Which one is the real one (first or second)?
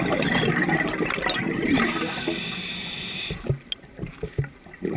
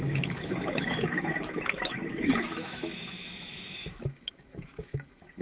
first